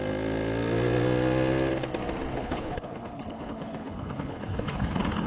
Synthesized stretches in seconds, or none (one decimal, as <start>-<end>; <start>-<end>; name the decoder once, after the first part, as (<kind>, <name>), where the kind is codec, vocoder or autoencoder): 2.3-5.3 (codec, HILCodec)